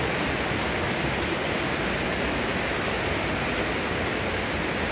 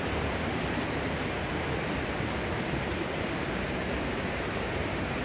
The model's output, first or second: second